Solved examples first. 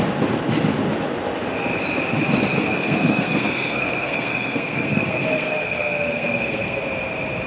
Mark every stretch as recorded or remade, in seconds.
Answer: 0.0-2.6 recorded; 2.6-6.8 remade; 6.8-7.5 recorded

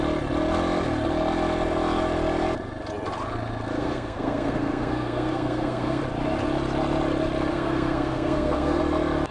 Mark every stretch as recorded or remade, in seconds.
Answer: 0.0-3.8 recorded; 3.8-6.0 remade; 6.0-7.5 recorded; 7.5-8.8 remade; 8.8-9.3 recorded

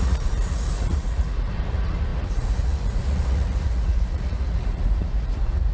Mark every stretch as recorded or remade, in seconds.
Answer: 0.0-5.7 remade

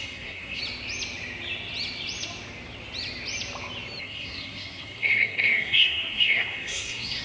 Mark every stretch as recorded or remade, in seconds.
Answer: 0.0-0.6 remade; 0.6-4.0 recorded; 4.0-7.2 remade

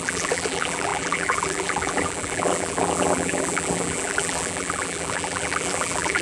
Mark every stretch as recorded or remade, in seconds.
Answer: 0.0-6.2 remade

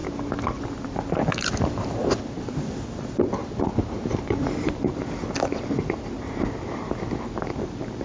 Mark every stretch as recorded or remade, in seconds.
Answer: 0.0-0.6 recorded; 0.6-3.4 remade; 3.4-5.6 recorded; 5.6-8.0 remade

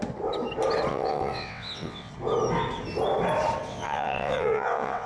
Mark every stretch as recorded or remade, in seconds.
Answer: 0.0-0.9 recorded; 0.9-2.1 remade; 2.1-3.7 recorded; 3.7-5.1 remade

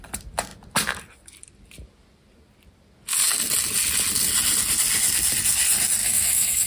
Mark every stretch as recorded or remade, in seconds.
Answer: 0.0-6.0 recorded; 6.0-6.7 remade